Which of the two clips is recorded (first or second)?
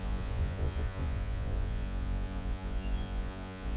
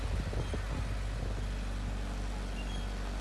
second